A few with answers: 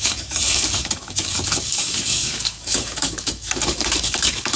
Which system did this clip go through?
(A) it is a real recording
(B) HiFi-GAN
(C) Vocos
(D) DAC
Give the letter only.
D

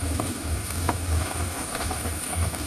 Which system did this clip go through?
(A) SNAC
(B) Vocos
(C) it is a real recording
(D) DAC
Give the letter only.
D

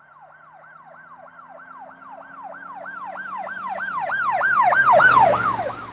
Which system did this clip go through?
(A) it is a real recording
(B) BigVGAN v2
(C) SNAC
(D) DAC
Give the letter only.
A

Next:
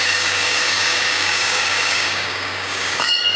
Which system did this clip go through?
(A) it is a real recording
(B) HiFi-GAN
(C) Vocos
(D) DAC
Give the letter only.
D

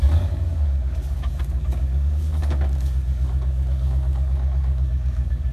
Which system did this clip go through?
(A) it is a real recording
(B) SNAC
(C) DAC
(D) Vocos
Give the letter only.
C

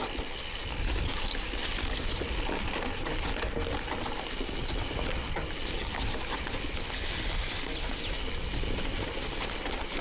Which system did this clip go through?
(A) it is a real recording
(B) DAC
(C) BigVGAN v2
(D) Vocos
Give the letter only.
A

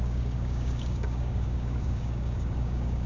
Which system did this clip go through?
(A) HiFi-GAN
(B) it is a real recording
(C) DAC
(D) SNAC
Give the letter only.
C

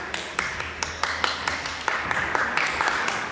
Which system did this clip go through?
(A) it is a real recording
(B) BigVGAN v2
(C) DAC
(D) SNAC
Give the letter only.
C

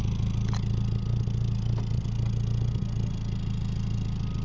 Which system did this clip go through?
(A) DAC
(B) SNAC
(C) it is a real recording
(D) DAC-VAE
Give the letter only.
C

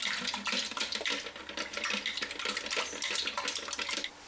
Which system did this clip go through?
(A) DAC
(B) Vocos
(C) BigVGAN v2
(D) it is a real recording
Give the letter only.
D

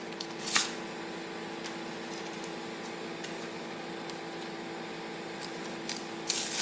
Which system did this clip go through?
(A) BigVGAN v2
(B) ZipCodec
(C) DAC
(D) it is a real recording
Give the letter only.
D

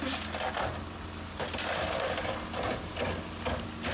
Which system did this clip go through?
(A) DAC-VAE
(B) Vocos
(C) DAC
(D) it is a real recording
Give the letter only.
D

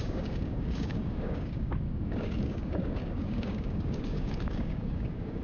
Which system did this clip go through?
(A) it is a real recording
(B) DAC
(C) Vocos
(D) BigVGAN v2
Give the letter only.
B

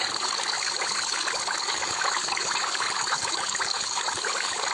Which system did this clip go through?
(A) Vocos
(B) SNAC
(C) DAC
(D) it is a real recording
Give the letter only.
C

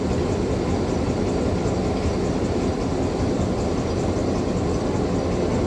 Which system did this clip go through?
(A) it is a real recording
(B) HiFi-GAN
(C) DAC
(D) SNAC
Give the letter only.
A